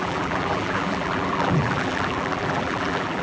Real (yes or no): no